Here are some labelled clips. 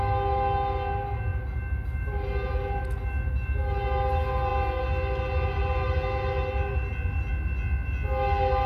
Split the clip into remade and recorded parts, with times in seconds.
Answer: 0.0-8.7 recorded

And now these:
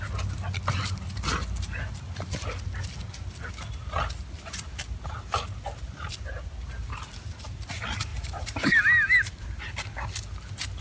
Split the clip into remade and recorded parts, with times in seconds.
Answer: 0.0-8.1 recorded; 8.1-8.8 remade; 8.8-10.8 recorded